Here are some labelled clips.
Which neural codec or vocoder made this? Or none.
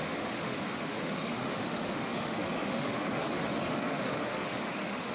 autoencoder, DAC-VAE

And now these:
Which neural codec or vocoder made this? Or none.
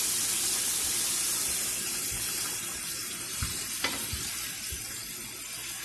none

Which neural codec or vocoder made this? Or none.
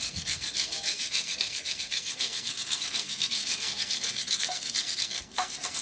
codec, SNAC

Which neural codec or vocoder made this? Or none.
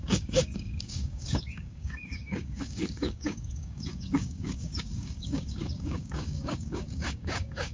codec, DAC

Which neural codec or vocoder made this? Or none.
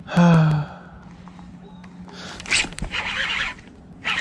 none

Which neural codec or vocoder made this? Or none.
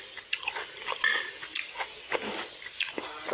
none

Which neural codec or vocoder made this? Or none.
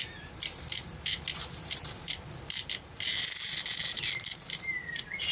vocoder, BigVGAN v2